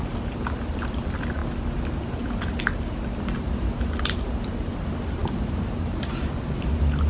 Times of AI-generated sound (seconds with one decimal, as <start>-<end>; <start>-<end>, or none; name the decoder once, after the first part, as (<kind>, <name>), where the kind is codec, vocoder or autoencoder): none